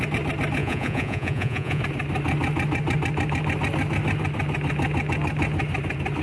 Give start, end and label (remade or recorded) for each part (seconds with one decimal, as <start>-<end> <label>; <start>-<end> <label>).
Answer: 0.0-0.6 recorded; 0.6-1.8 remade; 1.8-6.2 recorded